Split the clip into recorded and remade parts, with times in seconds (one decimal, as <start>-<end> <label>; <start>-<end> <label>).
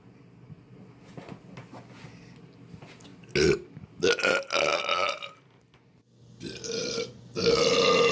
0.0-8.1 recorded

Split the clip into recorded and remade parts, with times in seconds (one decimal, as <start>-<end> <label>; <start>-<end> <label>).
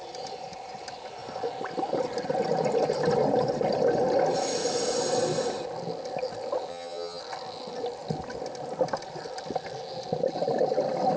0.0-6.7 recorded; 6.7-7.2 remade; 7.2-11.2 recorded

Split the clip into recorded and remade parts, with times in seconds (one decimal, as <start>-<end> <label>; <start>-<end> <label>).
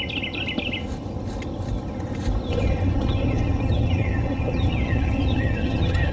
0.0-2.5 recorded; 2.5-6.1 remade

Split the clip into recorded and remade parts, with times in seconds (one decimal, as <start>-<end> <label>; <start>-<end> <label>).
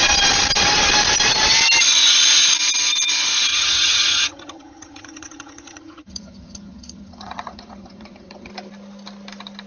0.0-3.5 recorded; 3.5-8.5 remade; 8.5-9.7 recorded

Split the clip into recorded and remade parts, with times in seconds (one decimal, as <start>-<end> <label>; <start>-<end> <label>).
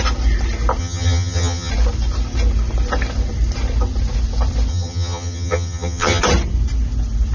0.0-0.8 recorded; 0.8-1.7 remade; 1.7-4.7 recorded; 4.7-6.2 remade; 6.2-7.3 recorded